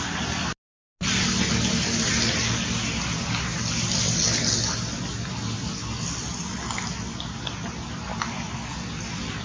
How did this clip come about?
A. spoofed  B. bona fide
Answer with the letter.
B